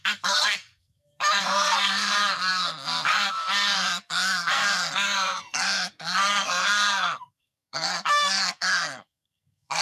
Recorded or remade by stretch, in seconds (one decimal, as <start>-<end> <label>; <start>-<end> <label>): 0.0-9.8 remade